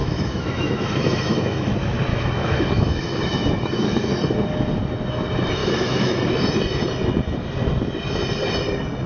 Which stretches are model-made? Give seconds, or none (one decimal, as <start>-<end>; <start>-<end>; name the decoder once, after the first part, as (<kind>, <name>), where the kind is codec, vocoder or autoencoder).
0.0-1.7 (autoencoder, DAC-VAE); 2.1-4.1; 5.6-6.2